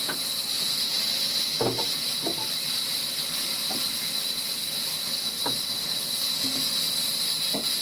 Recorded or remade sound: recorded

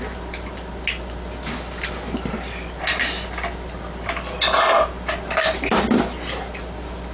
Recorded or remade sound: recorded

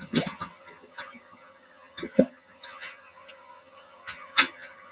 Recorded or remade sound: remade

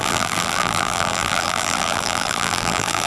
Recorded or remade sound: remade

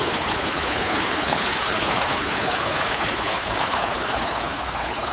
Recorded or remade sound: remade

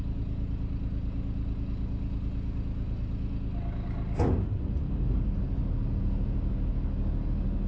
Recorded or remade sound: recorded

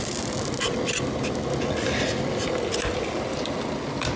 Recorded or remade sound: recorded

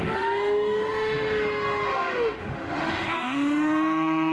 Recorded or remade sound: remade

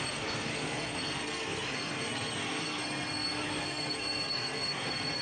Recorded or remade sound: remade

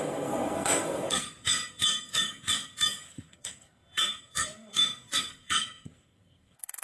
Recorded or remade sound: remade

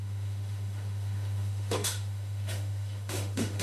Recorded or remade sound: remade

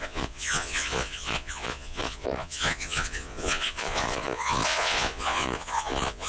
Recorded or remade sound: remade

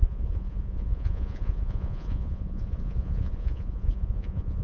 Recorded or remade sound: remade